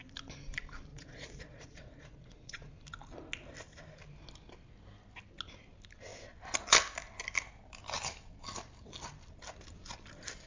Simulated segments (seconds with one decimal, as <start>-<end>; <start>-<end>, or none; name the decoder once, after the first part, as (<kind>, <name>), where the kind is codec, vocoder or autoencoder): 0.9-2.7 (vocoder, Vocos)